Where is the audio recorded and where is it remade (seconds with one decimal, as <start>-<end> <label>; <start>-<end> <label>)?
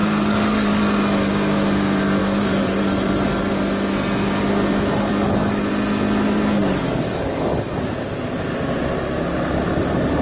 0.0-0.8 remade; 0.8-2.2 recorded; 2.2-3.5 remade; 3.5-5.1 recorded; 5.1-5.7 remade; 5.7-6.6 recorded; 6.6-7.8 remade; 7.8-10.2 recorded